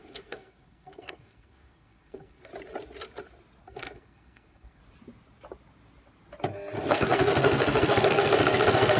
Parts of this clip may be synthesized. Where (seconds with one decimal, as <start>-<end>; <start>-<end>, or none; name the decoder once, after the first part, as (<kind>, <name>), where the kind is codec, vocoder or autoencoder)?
0.0-2.5 (codec, SNAC); 3.6-4.8; 6.9-9.0